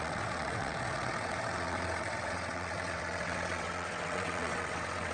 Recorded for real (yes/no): no